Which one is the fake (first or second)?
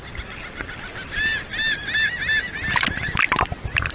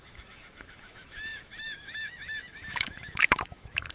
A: second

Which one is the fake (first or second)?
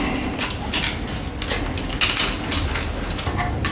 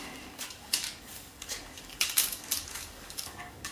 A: second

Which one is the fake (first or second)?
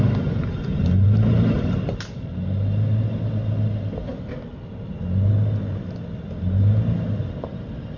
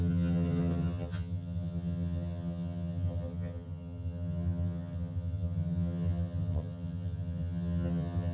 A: second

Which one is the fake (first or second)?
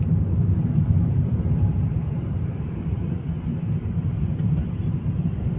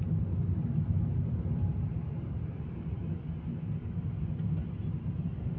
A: first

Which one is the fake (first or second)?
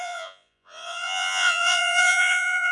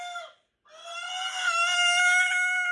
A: first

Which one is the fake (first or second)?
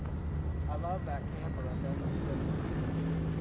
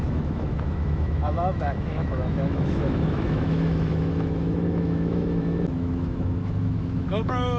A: second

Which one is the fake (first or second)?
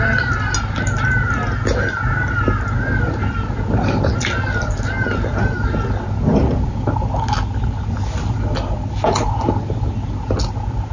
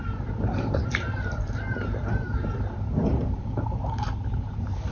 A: second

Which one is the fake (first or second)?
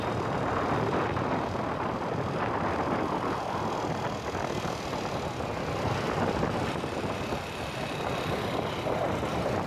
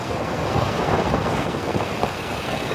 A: second